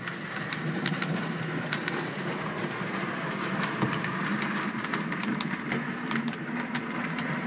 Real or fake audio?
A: fake